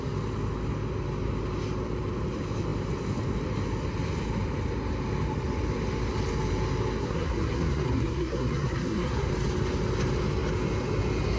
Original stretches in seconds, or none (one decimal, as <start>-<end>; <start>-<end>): 0.0-7.0; 9.3-11.4